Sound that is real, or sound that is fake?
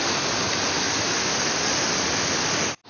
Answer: real